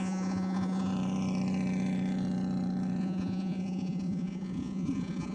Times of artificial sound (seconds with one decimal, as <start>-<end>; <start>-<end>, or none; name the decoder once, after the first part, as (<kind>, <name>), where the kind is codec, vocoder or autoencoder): 0.0-0.9 (vocoder, Vocos); 3.0-5.3